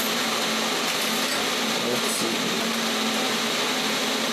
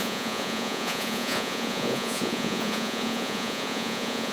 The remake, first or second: second